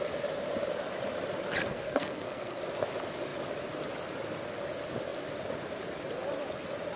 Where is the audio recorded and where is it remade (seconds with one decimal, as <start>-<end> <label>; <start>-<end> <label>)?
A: 0.0-1.6 recorded; 1.6-2.6 remade; 2.6-7.0 recorded